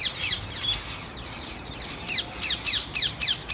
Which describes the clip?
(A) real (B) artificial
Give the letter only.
A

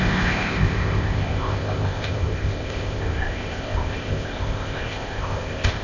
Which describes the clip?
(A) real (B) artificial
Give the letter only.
B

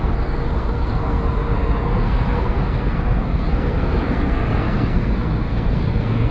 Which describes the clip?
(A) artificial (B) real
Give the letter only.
A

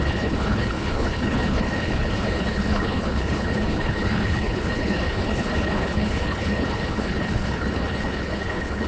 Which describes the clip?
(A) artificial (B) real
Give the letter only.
A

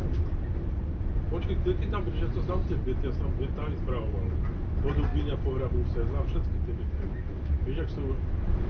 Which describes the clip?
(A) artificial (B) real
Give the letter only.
B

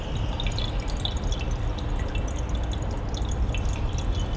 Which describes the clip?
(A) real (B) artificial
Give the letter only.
A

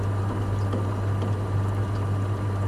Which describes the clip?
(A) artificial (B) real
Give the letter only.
B